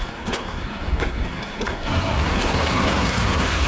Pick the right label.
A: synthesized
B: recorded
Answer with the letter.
A